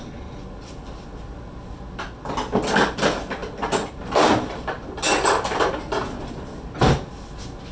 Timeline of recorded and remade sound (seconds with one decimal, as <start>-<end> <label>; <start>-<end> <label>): 0.0-7.7 recorded